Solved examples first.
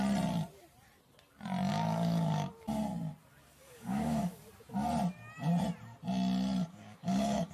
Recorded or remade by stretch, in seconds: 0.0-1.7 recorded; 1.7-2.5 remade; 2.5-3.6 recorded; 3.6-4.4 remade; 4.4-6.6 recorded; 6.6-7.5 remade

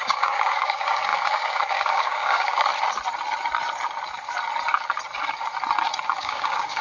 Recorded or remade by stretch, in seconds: 0.0-2.7 remade; 2.7-6.2 recorded; 6.2-6.8 remade

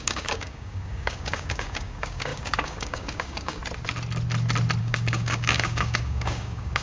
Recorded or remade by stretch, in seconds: 0.0-3.6 remade; 3.6-4.8 recorded; 4.8-6.8 remade

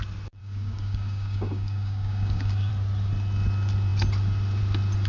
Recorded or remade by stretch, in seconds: 0.0-0.4 recorded; 0.4-2.7 remade; 2.7-5.1 recorded

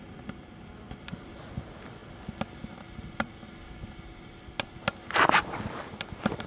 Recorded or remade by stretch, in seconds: 0.0-6.5 recorded

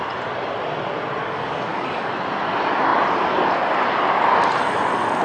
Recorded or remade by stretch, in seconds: 0.0-1.2 recorded; 1.2-2.1 remade; 2.1-5.2 recorded